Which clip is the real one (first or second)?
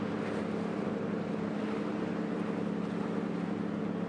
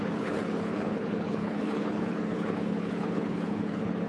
first